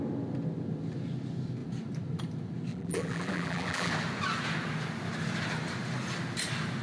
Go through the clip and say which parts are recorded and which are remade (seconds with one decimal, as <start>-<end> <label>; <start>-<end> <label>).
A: 0.0-2.7 recorded; 2.7-3.9 remade; 3.9-6.8 recorded